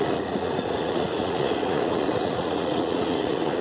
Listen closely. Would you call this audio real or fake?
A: fake